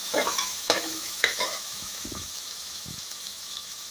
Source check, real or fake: fake